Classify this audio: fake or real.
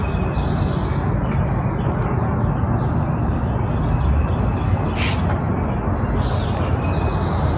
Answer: real